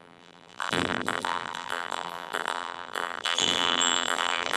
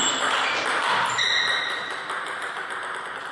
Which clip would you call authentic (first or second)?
second